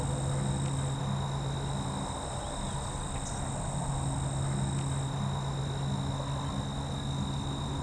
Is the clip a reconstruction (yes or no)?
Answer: no